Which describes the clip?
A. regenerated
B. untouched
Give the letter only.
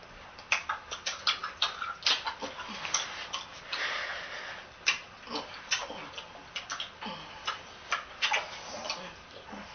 B